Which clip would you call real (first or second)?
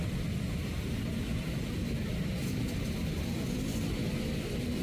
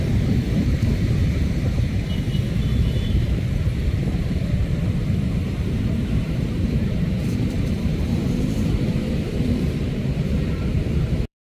first